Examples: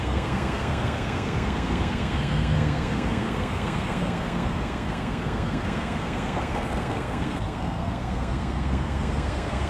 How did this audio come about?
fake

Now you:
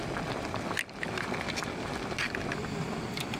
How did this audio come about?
real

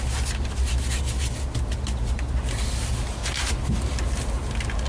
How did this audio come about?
real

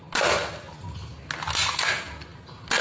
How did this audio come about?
real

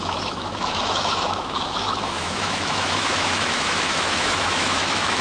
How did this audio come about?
fake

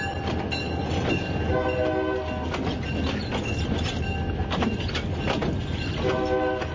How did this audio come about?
real